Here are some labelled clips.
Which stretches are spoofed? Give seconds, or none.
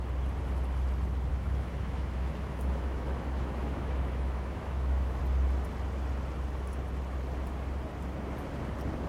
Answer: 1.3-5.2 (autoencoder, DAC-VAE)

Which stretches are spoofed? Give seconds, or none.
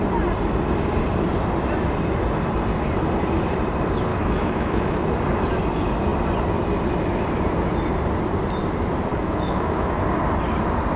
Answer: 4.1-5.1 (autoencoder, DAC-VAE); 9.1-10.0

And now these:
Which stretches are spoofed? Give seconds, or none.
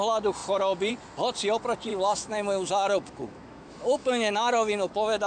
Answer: 1.9-5.3 (autoencoder, DAC-VAE)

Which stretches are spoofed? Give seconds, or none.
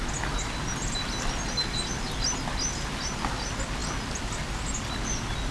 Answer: none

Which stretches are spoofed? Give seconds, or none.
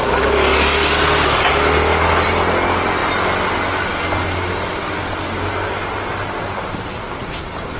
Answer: none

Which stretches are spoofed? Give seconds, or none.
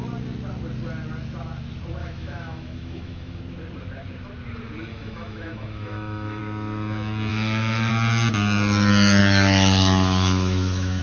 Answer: 2.0-3.4 (autoencoder, DAC-VAE); 4.9-6.4; 7.3-7.9; 9.2-11.0